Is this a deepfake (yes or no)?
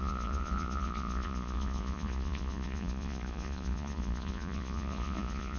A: yes